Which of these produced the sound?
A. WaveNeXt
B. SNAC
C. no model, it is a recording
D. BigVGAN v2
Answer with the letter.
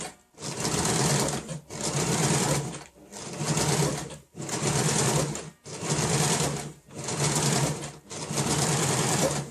D